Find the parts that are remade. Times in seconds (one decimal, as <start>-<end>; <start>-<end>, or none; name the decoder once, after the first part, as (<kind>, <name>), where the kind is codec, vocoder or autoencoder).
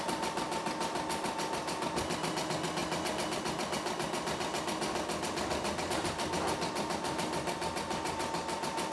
none